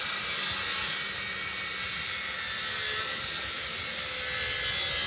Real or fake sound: real